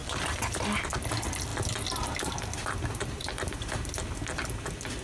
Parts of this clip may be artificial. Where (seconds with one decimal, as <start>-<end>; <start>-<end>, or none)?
2.6-3.6